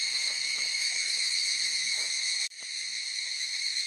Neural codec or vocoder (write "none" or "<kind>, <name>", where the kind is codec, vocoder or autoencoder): autoencoder, DAC-VAE